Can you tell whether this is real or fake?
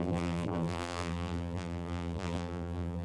fake